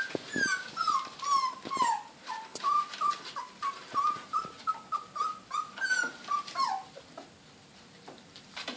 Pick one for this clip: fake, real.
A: real